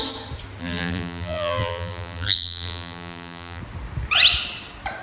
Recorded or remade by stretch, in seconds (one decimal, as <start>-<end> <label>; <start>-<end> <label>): 0.0-0.6 recorded; 0.6-3.6 remade; 3.6-5.0 recorded